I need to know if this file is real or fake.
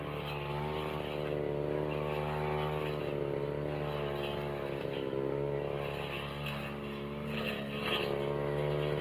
real